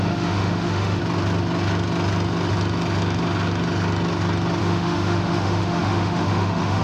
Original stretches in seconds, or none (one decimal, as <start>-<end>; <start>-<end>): 1.0-4.6